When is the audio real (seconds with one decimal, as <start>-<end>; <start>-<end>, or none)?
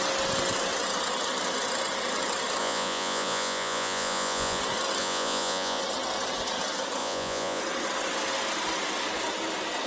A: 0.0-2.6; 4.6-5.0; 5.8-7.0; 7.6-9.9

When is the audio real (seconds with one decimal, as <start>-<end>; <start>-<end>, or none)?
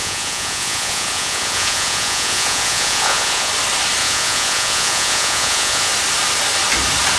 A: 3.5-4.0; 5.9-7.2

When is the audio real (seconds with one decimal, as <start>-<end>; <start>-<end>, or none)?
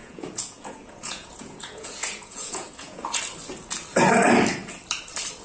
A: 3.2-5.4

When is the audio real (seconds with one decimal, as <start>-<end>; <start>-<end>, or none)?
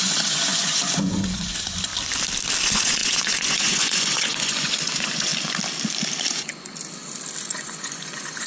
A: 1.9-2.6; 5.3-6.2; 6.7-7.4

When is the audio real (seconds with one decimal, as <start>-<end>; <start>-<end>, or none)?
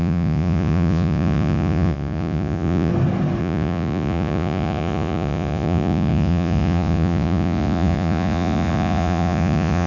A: 2.9-3.4